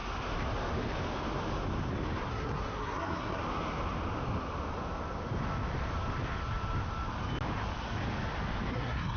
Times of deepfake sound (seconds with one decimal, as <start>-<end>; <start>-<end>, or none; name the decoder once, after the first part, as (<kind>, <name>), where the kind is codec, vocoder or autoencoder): 2.3-3.4 (codec, SNAC); 8.7-9.2